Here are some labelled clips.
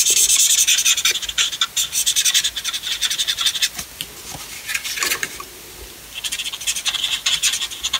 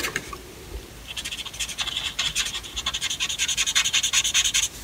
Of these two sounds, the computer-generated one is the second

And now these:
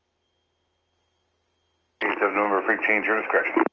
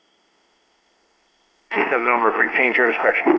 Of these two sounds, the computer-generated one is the second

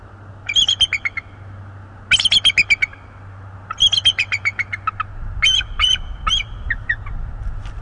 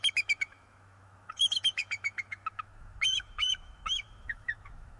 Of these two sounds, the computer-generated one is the second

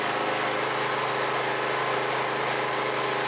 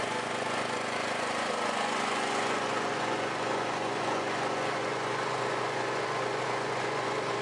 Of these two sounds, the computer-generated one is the second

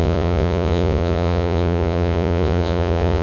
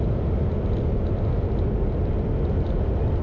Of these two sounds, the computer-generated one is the first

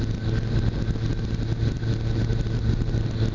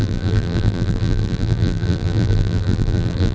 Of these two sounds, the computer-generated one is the second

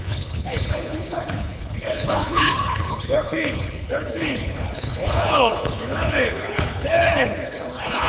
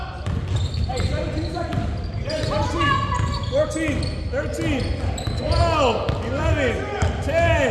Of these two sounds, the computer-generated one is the first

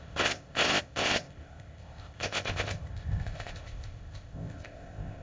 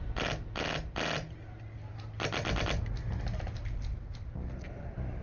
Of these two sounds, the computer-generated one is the first